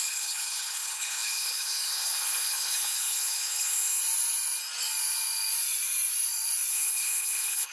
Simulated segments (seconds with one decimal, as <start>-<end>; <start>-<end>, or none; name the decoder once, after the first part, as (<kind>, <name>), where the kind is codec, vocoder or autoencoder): 0.0-4.0 (codec, HILCodec); 6.7-7.7

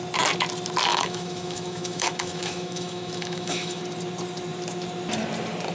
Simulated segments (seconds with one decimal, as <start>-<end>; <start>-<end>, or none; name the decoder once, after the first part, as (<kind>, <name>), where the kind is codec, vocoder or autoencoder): 0.9-3.8 (autoencoder, DAC-VAE)

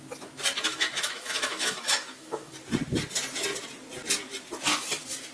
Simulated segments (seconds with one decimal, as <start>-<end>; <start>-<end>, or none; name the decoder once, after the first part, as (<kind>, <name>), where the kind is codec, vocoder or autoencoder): 0.7-2.5 (autoencoder, DAC-VAE)

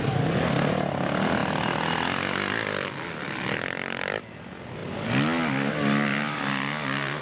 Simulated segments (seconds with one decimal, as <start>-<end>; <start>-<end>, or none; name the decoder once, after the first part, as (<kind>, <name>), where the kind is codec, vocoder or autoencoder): none

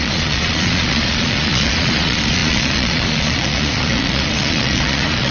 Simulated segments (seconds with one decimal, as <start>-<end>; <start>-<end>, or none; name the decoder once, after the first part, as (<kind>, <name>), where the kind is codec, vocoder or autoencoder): 0.0-5.3 (vocoder, Vocos)

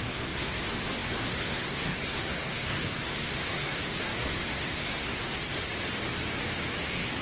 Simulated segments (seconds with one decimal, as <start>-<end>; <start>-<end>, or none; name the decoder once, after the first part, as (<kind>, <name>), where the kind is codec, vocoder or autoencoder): 0.0-5.7 (codec, SNAC); 6.8-7.2